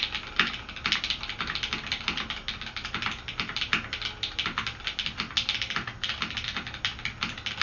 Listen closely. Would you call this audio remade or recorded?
recorded